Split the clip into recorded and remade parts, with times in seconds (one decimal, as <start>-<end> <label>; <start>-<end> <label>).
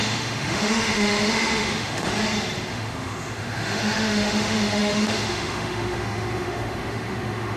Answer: 0.0-2.1 remade; 2.1-2.7 recorded; 2.7-7.6 remade